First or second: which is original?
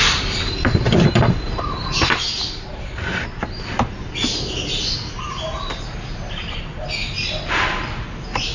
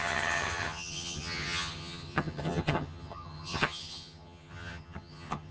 first